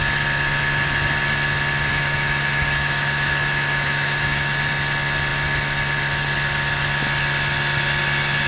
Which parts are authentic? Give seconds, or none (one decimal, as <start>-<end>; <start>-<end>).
0.0-1.9; 4.7-8.5